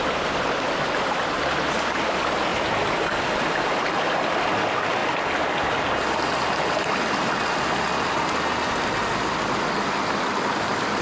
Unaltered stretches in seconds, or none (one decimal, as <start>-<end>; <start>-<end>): 0.0-11.0